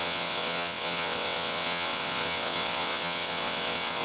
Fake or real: fake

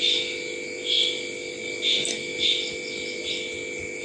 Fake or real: real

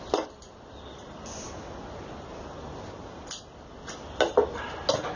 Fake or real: real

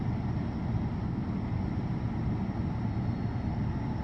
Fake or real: real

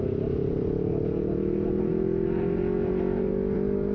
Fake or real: real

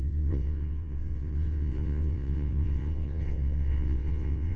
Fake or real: fake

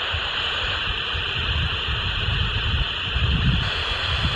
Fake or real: real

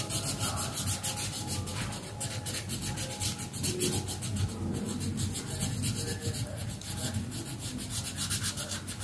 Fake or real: real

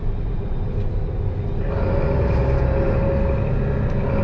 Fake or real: real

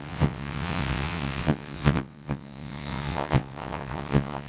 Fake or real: fake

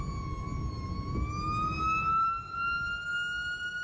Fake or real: real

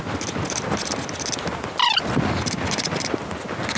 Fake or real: real